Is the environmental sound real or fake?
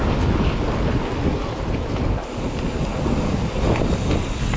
real